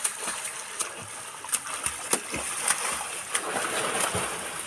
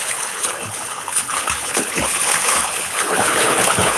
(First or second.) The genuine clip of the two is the first